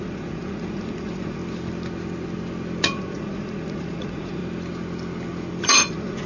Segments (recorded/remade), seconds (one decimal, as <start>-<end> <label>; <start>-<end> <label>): 0.0-1.4 remade; 1.4-2.8 recorded; 2.8-4.4 remade; 4.4-5.6 recorded; 5.6-6.3 remade